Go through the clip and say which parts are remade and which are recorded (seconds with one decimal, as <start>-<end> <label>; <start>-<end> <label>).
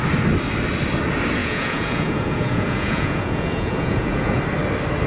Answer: 0.0-1.4 recorded; 1.4-4.4 remade; 4.4-5.1 recorded